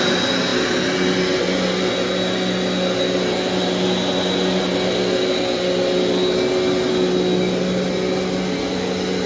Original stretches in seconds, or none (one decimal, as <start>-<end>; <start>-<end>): 0.0-9.3